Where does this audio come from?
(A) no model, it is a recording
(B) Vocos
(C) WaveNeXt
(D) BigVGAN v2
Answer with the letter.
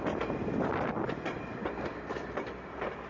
A